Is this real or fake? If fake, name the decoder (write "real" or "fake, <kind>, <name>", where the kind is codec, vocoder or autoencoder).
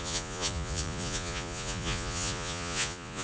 fake, vocoder, Vocos